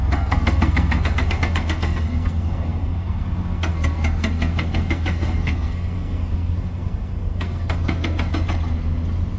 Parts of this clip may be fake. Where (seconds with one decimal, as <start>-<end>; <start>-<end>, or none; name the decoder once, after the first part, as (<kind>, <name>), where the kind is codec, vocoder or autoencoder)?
0.0-8.3 (codec, SNAC)